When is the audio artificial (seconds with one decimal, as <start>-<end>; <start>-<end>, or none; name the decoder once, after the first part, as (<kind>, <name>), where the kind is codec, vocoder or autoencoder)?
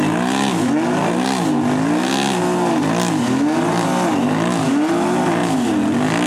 none